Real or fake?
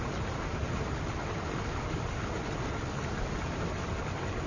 real